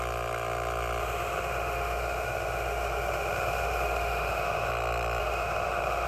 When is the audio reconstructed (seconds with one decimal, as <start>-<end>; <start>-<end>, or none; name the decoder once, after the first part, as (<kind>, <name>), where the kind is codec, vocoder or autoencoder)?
1.0-4.7 (autoencoder, DAC-VAE); 5.2-6.1